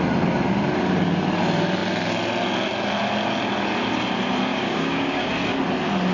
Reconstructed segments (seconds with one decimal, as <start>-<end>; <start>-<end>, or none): 4.5-5.3